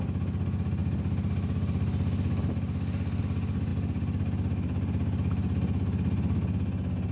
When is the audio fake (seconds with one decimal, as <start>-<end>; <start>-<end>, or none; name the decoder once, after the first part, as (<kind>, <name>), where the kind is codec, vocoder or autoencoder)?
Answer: none